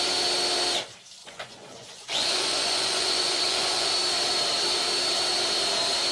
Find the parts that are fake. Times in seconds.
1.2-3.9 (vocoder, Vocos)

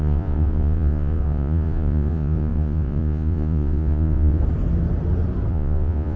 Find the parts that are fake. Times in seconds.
0.0-4.4 (vocoder, Vocos); 5.5-6.2

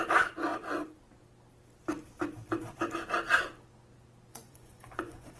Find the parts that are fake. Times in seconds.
4.3-5.4 (vocoder, Vocos)

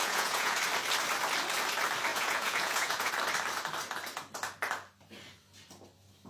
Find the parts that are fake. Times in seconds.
0.0-0.6 (vocoder, Vocos); 2.1-3.1